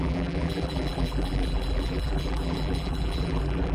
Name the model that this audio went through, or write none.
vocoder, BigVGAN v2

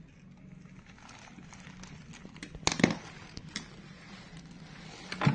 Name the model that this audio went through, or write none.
none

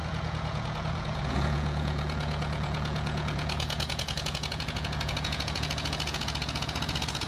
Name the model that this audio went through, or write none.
vocoder, Vocos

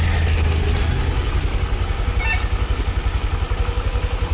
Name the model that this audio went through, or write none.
none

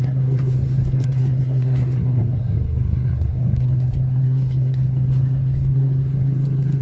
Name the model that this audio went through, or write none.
codec, SNAC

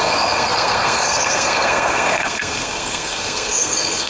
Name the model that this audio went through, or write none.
codec, SNAC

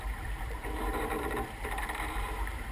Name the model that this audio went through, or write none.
vocoder, BigVGAN v2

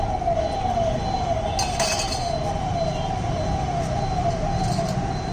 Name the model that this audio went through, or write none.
none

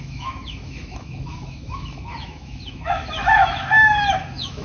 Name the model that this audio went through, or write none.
autoencoder, DAC-VAE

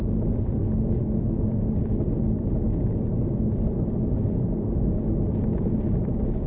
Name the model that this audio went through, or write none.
none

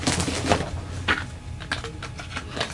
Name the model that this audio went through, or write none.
none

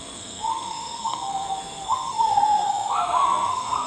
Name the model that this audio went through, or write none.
codec, SNAC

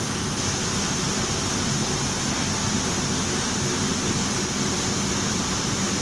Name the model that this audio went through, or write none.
none